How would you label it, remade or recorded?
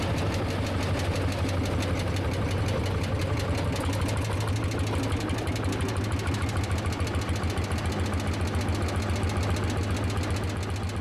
recorded